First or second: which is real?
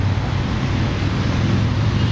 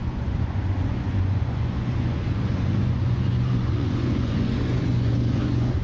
first